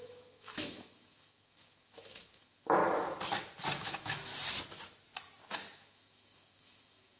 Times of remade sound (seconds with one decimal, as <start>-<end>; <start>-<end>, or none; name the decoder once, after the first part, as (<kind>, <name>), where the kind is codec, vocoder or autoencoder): 0.0-2.8 (autoencoder, DAC-VAE); 3.8-4.3; 5.5-7.2